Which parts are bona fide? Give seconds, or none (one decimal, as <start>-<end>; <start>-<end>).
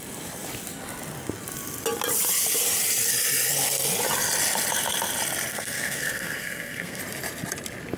0.0-5.5; 7.0-8.0